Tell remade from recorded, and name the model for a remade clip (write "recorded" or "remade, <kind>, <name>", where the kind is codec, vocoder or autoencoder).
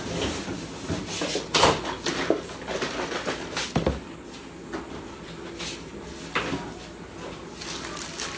recorded